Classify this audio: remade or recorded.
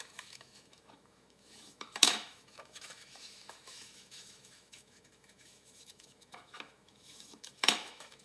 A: remade